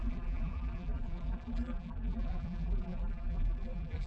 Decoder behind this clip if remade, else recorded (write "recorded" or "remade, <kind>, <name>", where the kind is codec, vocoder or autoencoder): remade, vocoder, BigVGAN v2